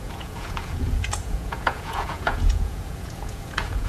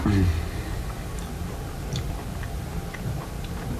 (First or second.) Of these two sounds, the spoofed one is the first